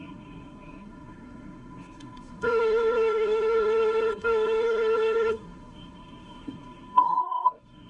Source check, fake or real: fake